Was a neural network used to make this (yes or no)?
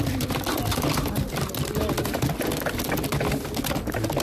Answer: no